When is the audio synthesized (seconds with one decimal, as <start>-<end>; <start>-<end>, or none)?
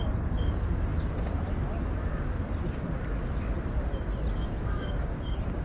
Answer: 0.0-0.9; 4.3-5.6